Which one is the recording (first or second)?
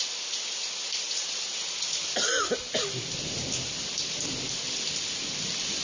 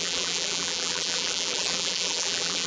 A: first